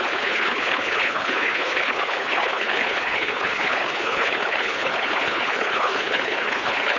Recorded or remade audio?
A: remade